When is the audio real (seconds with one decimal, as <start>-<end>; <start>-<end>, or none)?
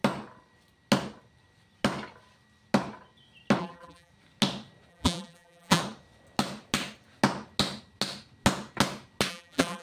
0.0-3.6; 4.1-4.9; 5.8-9.3